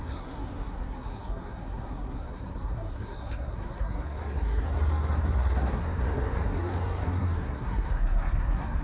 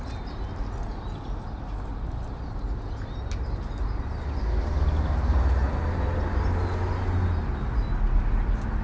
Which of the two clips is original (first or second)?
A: second